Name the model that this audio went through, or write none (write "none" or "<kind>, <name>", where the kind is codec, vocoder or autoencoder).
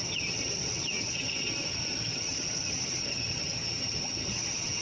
vocoder, HiFi-GAN